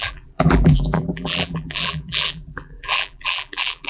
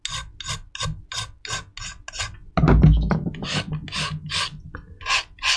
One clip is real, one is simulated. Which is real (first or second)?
second